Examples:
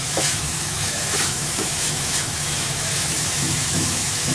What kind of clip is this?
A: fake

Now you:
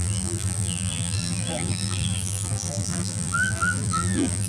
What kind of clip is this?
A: fake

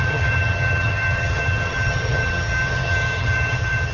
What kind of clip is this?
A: fake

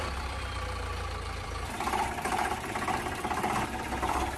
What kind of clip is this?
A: fake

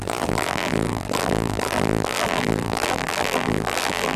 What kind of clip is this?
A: fake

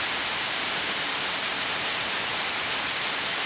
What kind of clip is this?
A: real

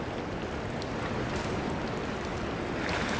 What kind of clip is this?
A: real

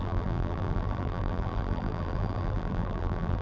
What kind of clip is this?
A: fake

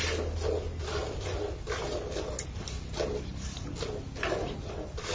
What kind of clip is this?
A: real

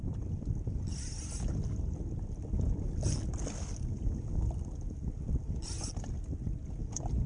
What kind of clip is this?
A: real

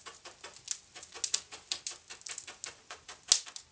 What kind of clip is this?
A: real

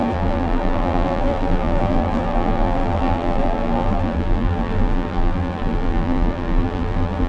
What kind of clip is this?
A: fake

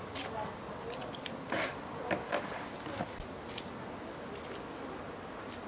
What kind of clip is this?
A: real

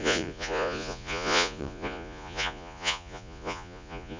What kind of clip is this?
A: fake